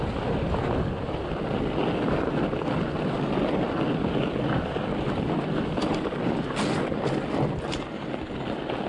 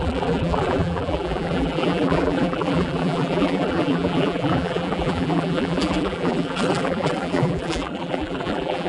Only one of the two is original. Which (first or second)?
first